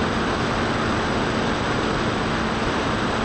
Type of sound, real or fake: real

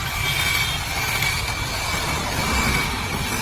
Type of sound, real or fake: real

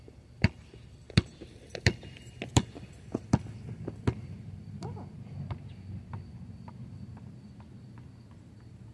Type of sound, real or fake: real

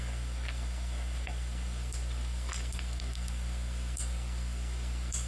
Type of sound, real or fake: fake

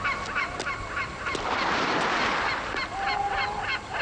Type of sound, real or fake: real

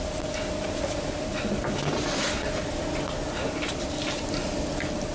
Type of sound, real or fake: real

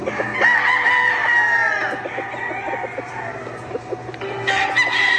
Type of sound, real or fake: real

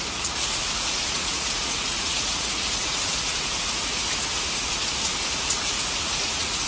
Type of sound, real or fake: fake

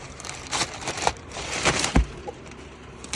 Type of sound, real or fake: fake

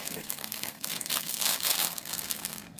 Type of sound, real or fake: fake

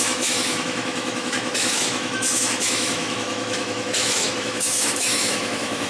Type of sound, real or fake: fake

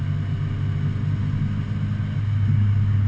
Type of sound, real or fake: real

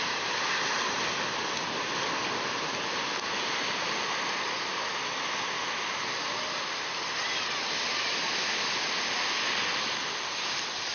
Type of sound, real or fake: real